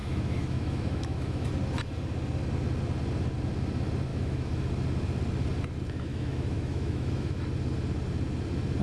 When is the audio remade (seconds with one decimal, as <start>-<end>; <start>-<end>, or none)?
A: 0.0-1.5; 4.1-4.7; 6.1-7.4